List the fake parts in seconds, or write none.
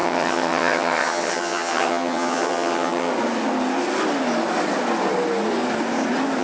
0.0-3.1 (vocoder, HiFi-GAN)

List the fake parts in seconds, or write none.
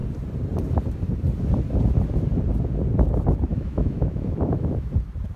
3.5-4.9 (autoencoder, DAC-VAE)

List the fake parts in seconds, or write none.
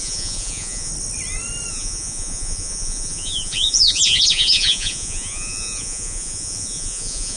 0.0-0.9 (vocoder, Vocos); 1.7-7.4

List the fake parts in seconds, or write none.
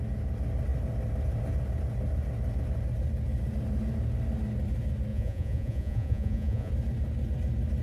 5.1-6.7 (vocoder, Vocos)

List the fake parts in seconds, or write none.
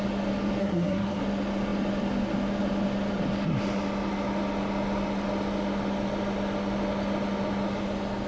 0.6-1.2 (codec, SNAC)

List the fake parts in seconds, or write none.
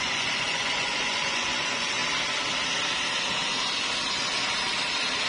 0.0-2.0 (vocoder, Vocos)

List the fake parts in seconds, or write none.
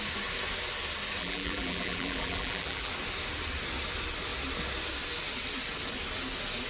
1.2-2.9 (vocoder, BigVGAN v2)